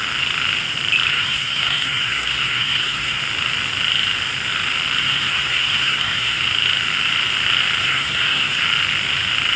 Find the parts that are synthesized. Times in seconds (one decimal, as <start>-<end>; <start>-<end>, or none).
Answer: 1.1-3.2; 5.0-6.4; 7.8-8.6